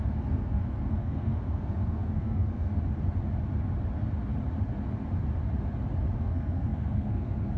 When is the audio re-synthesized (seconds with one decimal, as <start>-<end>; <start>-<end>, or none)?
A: 0.0-2.7; 6.2-7.6